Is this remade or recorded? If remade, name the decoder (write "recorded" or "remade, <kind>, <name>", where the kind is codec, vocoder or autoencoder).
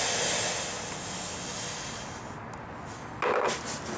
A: recorded